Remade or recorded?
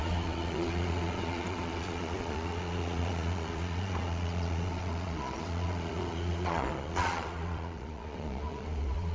remade